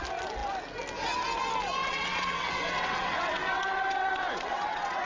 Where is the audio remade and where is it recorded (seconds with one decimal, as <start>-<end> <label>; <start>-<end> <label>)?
0.0-1.8 recorded; 1.8-5.1 remade

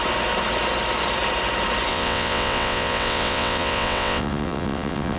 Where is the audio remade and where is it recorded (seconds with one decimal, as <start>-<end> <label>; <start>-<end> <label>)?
0.0-1.9 recorded; 1.9-5.2 remade

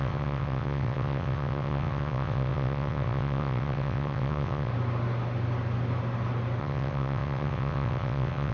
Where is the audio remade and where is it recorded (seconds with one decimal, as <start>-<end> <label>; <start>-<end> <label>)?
0.0-4.7 remade; 4.7-6.6 recorded; 6.6-8.5 remade

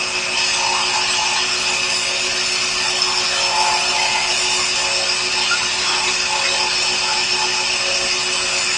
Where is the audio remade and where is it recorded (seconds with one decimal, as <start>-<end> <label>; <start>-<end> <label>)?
0.0-8.8 recorded

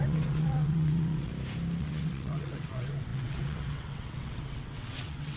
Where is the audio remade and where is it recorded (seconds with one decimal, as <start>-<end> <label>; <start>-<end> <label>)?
0.0-1.3 remade; 1.3-1.8 recorded; 1.8-5.4 remade

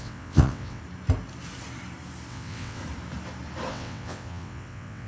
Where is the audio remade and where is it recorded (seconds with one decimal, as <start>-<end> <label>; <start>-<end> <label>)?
0.0-0.8 remade; 0.8-2.3 recorded; 2.3-2.8 remade; 2.8-3.7 recorded; 3.7-5.1 remade

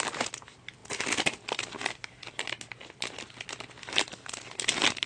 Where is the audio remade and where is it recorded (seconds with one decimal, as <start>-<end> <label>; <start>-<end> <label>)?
0.0-5.1 recorded